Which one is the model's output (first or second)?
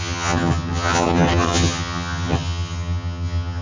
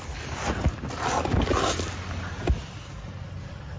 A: first